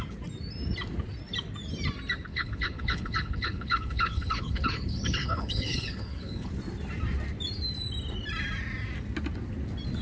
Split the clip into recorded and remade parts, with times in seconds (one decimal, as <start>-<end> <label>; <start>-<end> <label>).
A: 0.0-2.3 recorded; 2.3-6.5 remade; 6.5-10.0 recorded